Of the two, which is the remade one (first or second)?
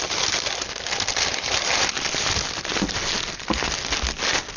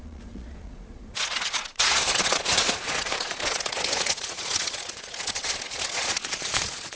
second